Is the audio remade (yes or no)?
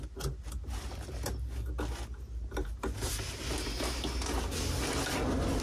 no